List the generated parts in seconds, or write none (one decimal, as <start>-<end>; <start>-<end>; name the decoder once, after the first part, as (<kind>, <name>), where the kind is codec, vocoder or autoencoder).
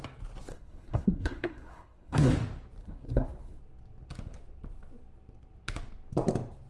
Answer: 0.5-2.3 (codec, SNAC); 2.8-3.6